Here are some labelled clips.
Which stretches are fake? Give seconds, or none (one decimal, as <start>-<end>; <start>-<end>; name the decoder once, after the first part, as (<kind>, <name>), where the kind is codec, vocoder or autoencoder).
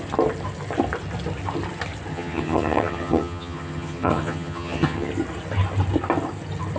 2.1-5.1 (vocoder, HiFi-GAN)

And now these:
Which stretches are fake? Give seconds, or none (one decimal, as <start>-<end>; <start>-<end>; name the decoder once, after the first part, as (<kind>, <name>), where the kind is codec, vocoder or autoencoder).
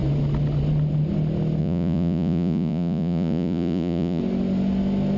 1.6-4.2 (vocoder, Vocos)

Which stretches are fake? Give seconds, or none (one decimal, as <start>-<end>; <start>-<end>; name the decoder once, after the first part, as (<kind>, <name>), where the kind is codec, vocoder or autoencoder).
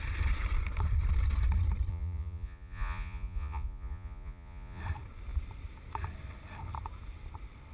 1.9-4.8 (vocoder, Vocos)